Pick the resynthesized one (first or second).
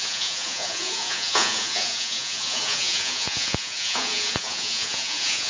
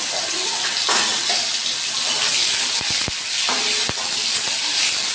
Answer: first